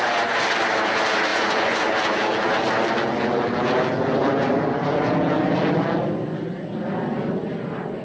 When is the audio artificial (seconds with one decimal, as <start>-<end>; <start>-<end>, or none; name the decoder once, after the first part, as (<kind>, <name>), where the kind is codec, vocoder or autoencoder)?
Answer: 1.3-1.8 (vocoder, Vocos)